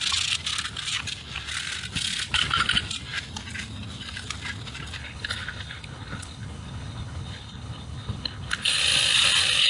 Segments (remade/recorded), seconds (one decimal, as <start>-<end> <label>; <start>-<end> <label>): 0.0-5.0 recorded; 5.0-8.8 remade; 8.8-9.7 recorded